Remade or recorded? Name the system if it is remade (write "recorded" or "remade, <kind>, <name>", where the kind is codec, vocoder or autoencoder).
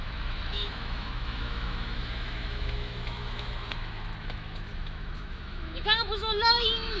remade, autoencoder, DAC-VAE